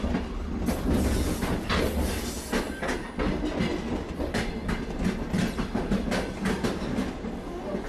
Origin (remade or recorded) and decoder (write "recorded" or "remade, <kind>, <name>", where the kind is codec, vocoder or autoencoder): recorded